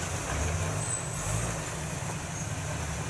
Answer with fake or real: real